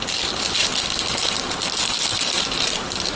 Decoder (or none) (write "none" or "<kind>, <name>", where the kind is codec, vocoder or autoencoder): none